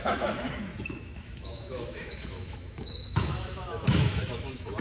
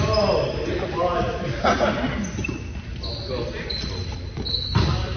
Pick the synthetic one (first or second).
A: first